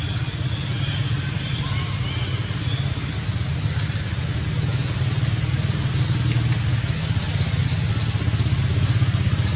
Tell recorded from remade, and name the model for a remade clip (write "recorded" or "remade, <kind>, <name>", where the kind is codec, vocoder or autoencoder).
recorded